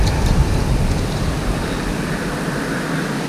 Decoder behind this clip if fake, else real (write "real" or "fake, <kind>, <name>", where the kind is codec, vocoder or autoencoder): real